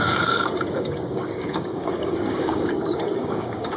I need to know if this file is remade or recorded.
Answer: remade